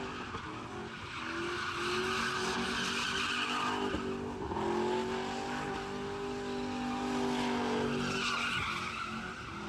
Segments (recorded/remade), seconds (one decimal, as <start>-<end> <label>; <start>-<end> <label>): 0.0-9.7 recorded